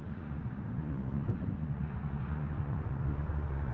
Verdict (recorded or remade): remade